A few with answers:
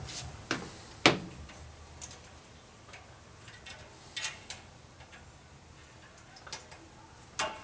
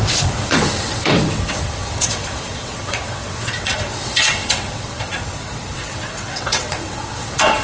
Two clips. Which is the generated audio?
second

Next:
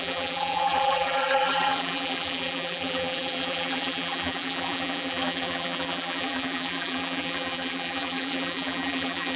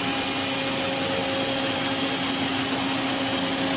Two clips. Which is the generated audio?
first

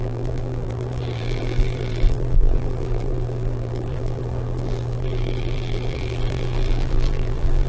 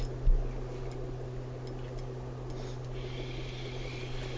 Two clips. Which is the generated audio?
first